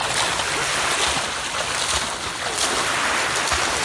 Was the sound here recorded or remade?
recorded